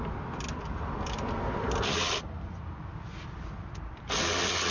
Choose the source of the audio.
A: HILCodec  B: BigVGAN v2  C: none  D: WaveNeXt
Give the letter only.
C